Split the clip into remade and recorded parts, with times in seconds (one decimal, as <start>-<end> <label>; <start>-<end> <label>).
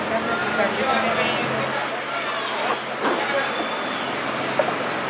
0.0-5.1 recorded